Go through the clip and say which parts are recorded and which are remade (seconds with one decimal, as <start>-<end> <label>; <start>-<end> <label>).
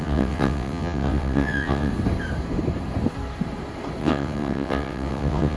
0.0-1.9 remade; 1.9-4.0 recorded; 4.0-5.6 remade